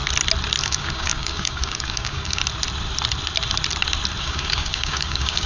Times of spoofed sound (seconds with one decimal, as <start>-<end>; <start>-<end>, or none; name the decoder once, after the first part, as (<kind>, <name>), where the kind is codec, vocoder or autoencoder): 0.6-2.4 (codec, DAC); 4.2-5.5